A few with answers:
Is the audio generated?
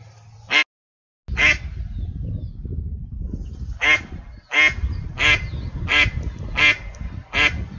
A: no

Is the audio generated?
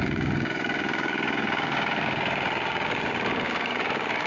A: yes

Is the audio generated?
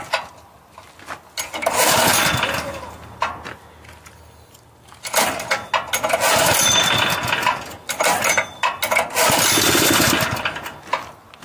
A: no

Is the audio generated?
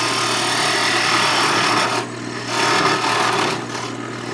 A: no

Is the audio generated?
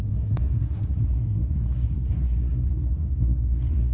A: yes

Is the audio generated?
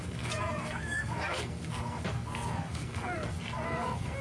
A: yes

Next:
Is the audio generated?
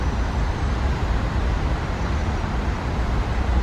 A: no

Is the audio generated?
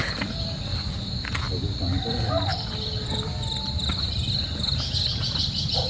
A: no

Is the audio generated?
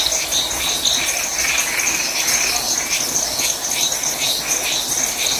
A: no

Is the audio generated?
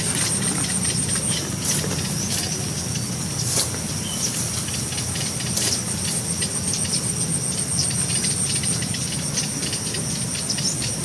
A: no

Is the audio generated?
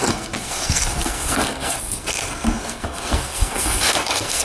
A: yes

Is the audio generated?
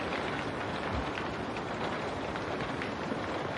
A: no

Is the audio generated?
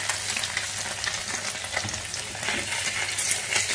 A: no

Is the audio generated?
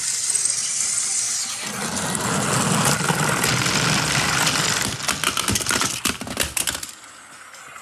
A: no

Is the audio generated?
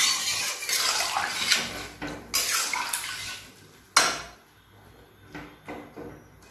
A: no